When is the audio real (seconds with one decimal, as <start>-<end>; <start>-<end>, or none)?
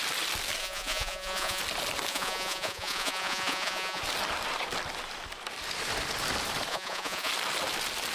0.0-0.6; 1.6-2.1; 4.0-6.7; 7.3-8.1